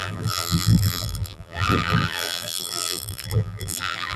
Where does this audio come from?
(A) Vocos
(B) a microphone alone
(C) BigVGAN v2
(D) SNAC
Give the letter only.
C